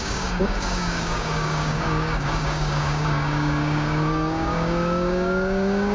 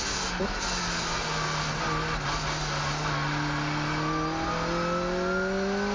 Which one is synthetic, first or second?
first